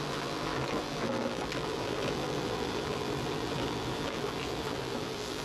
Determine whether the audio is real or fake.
fake